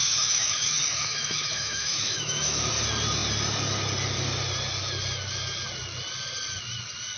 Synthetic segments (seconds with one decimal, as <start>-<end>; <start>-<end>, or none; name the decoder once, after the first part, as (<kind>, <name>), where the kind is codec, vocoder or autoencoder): 0.0-2.7 (autoencoder, DAC-VAE)